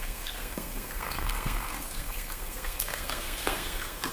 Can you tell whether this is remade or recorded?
remade